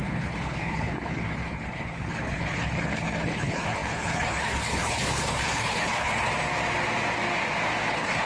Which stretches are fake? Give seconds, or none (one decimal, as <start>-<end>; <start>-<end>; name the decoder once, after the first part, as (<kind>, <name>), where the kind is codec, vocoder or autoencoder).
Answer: 0.0-6.3 (codec, HILCodec); 7.9-8.3